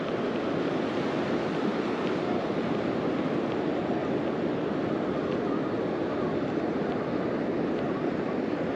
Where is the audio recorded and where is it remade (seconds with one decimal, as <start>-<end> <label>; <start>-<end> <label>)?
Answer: 0.0-8.8 recorded